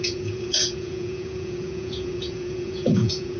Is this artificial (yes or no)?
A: yes